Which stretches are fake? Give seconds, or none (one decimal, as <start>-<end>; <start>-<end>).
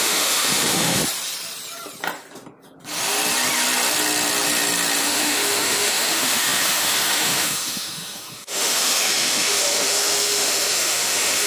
0.0-1.0; 5.0-11.5